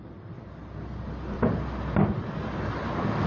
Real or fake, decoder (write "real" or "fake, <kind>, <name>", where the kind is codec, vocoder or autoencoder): real